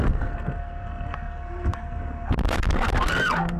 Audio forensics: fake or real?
fake